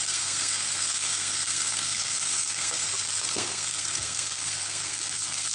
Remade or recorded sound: remade